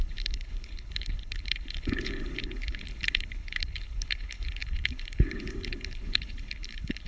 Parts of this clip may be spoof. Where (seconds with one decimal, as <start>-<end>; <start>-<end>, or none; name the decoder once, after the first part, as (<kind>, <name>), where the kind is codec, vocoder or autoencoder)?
0.0-7.1 (codec, HILCodec)